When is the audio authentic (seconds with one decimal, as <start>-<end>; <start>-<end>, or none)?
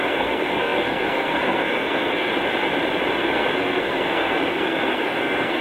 2.3-3.2